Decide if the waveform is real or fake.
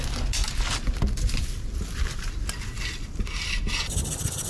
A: real